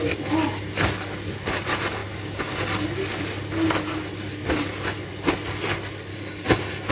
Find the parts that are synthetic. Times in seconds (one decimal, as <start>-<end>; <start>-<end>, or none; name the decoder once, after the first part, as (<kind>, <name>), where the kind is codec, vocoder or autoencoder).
6.1-6.9 (codec, DAC)